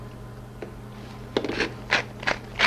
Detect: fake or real real